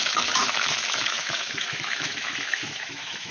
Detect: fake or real fake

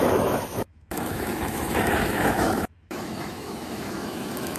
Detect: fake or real fake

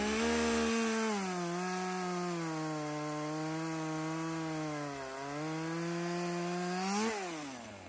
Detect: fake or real real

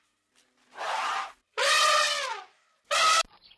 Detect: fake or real real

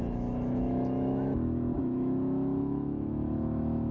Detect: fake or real fake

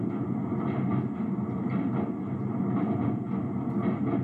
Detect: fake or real real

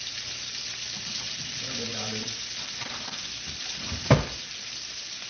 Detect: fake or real real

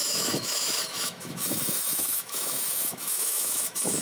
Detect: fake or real fake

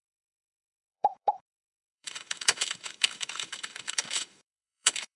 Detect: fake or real fake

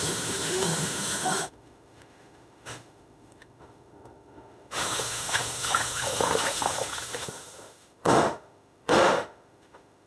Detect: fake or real fake